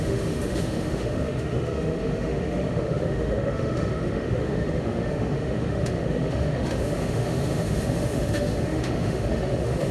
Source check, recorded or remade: remade